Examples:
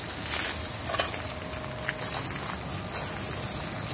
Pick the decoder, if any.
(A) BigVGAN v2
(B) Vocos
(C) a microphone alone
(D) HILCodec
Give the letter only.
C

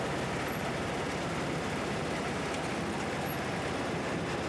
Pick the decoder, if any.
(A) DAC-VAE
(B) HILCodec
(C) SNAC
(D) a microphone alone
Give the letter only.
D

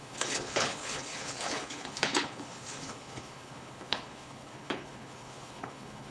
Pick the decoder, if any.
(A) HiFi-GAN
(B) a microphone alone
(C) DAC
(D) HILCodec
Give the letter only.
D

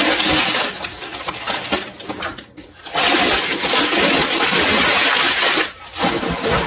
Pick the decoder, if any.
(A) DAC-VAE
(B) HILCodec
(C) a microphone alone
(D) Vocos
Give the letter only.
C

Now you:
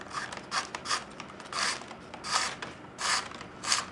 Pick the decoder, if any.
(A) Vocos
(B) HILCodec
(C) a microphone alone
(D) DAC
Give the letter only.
C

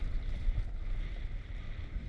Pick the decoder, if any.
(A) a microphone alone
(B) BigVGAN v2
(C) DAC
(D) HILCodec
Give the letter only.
A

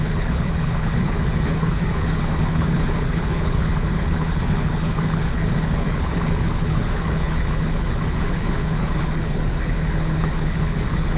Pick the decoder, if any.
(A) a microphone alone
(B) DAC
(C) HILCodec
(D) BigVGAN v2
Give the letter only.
C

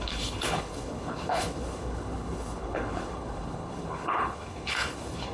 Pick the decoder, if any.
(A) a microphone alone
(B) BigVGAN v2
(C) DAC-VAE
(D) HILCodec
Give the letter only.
D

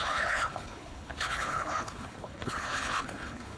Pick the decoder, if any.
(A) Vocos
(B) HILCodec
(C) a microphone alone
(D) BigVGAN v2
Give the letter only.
B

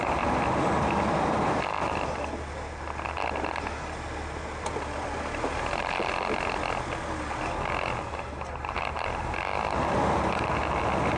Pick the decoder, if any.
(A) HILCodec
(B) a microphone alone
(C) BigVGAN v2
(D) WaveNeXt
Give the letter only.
B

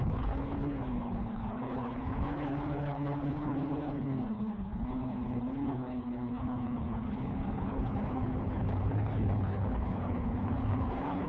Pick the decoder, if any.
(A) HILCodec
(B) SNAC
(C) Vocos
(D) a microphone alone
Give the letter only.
A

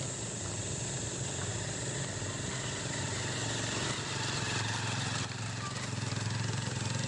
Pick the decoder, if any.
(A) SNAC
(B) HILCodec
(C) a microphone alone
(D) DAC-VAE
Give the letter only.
C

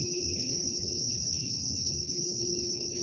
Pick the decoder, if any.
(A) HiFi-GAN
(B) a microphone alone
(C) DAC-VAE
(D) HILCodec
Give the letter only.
D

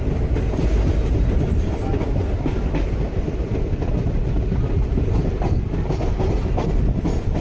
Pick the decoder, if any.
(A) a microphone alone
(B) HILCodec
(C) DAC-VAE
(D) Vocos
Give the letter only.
A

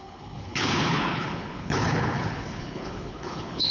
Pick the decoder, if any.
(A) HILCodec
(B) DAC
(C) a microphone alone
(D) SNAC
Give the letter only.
A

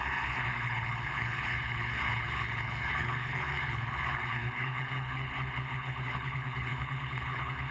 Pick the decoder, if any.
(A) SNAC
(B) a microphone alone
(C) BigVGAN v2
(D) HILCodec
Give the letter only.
D